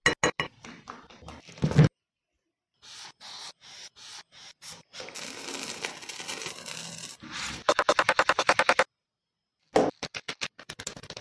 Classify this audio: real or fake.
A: real